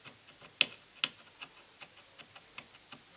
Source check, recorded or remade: recorded